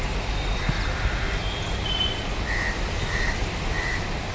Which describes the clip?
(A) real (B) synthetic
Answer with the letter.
B